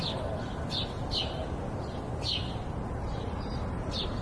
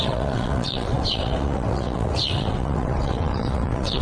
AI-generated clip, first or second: second